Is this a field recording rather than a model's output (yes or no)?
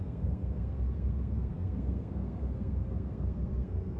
no